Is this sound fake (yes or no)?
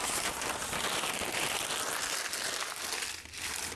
no